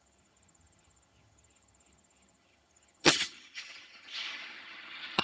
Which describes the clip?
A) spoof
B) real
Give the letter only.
A